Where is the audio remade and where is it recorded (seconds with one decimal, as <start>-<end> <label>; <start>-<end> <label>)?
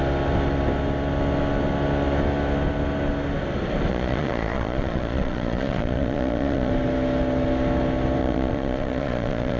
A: 0.0-3.9 recorded; 3.9-6.7 remade; 6.7-8.2 recorded; 8.2-9.6 remade